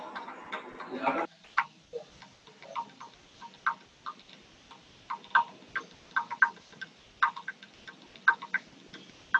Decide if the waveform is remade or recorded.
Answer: recorded